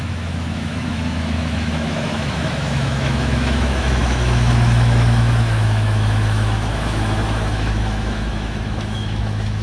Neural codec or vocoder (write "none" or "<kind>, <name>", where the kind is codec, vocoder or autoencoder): autoencoder, DAC-VAE